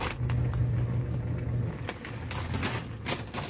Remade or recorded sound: recorded